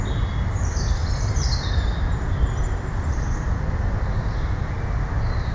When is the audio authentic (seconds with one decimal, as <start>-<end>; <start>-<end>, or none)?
0.0-5.5

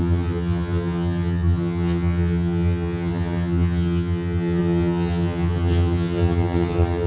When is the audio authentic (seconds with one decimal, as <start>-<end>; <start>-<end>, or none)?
none